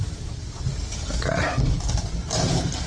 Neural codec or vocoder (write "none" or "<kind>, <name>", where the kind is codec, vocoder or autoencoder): none